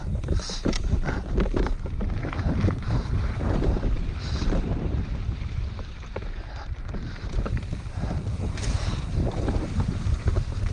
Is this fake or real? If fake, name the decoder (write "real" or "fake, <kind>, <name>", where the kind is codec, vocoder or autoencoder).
fake, vocoder, BigVGAN v2